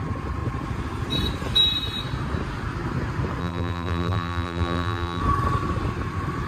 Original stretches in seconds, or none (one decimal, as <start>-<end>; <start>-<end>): 0.0-3.4; 5.2-6.5

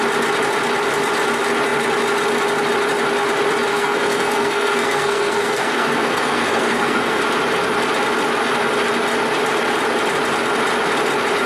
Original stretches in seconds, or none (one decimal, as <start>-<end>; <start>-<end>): 0.0-3.7; 7.2-11.5

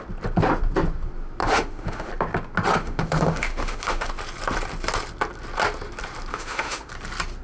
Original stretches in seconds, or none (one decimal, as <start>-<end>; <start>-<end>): 0.0-1.4; 2.1-2.8; 4.1-6.3; 6.9-7.4